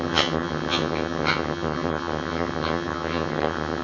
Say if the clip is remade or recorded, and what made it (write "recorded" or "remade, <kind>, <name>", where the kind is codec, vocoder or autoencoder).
remade, vocoder, HiFi-GAN